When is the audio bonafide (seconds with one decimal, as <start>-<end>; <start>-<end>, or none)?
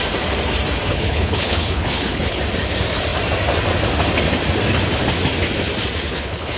0.0-0.9; 2.4-6.1